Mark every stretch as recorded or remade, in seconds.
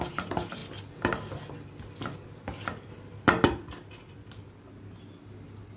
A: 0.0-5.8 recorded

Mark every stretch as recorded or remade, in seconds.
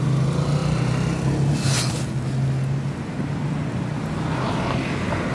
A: 0.0-5.3 recorded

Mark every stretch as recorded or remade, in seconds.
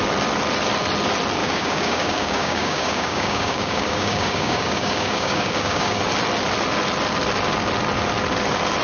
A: 0.0-1.4 recorded; 1.4-6.0 remade; 6.0-8.8 recorded